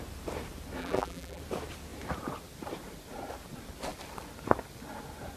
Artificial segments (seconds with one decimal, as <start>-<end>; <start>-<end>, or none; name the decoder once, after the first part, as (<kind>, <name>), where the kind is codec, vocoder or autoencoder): 0.8-1.4 (vocoder, BigVGAN v2)